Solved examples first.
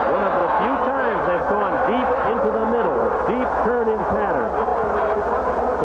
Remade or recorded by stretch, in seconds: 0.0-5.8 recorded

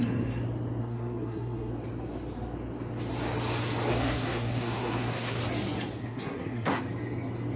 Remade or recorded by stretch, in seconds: 0.0-0.8 recorded; 0.8-1.7 remade; 1.7-3.9 recorded; 3.9-5.4 remade; 5.4-6.0 recorded; 6.0-6.8 remade; 6.8-7.6 recorded

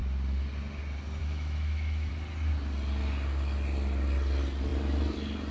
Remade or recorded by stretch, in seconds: 0.0-1.2 recorded; 1.2-2.1 remade; 2.1-5.5 recorded

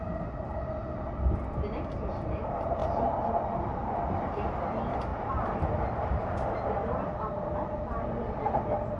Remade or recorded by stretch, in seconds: 0.0-2.8 recorded; 2.8-4.6 remade; 4.6-5.1 recorded; 5.1-5.7 remade; 5.7-9.0 recorded

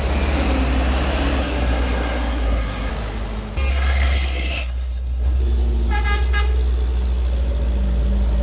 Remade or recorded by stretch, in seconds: 0.0-1.4 recorded; 1.4-2.9 remade; 2.9-3.7 recorded; 3.7-5.4 remade; 5.4-8.4 recorded

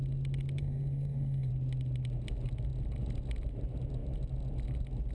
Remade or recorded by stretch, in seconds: 0.0-0.6 recorded; 0.6-1.5 remade; 1.5-5.1 recorded

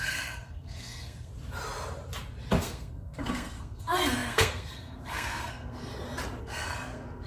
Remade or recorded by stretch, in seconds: 0.0-1.3 remade; 1.3-2.6 recorded; 2.6-5.9 remade; 5.9-6.4 recorded; 6.4-7.3 remade

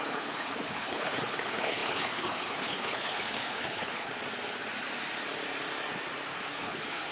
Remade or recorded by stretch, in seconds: 0.0-4.1 remade; 4.1-6.5 recorded; 6.5-7.1 remade